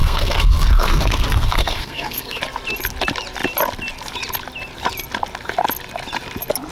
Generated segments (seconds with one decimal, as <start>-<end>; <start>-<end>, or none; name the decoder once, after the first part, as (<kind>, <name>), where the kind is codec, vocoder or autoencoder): 0.0-2.4 (codec, SNAC)